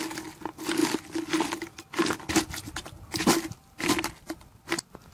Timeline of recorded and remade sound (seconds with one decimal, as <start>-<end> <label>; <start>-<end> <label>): 0.0-5.1 recorded